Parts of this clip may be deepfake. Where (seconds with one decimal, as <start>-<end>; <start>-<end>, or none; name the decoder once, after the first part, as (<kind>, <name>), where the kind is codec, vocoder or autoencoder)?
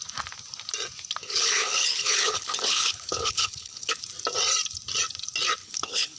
1.2-4.0 (codec, HILCodec); 5.6-6.2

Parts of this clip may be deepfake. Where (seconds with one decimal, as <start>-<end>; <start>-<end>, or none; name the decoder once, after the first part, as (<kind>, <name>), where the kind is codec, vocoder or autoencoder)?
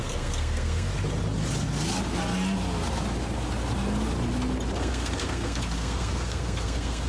0.0-0.9 (codec, SNAC); 4.8-7.1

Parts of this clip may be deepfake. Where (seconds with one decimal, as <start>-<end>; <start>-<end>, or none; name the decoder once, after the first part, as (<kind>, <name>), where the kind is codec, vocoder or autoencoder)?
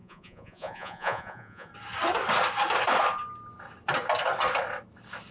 0.0-1.7 (vocoder, Vocos)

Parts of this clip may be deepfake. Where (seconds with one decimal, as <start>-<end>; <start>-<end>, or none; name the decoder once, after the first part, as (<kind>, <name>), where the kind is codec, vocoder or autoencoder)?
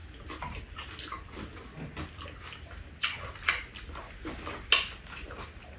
none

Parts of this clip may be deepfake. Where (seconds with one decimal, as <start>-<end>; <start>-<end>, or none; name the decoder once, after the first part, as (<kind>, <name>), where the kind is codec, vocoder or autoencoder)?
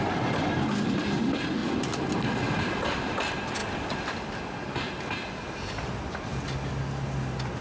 none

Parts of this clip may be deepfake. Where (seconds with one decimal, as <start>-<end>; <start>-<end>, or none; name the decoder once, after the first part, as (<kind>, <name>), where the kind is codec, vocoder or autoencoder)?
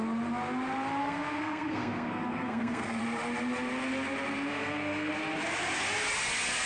1.0-3.0 (codec, SNAC); 4.5-5.1